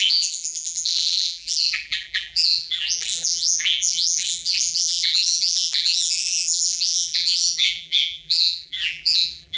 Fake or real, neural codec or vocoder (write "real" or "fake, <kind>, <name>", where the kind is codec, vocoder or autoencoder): fake, vocoder, BigVGAN v2